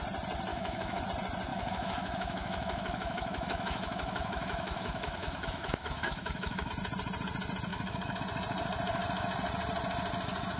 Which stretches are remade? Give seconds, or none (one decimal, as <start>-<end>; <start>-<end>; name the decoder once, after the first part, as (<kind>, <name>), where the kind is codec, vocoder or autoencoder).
0.5-1.0 (autoencoder, DAC-VAE); 1.5-6.7; 7.7-8.2